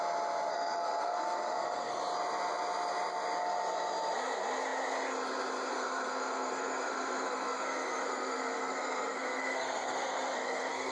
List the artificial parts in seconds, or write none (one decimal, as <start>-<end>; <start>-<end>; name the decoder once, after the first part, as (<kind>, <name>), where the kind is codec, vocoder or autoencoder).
0.5-2.0 (codec, SNAC); 5.7-10.9